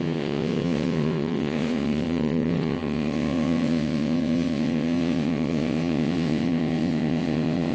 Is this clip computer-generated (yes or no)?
yes